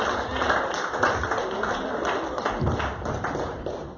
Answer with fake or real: real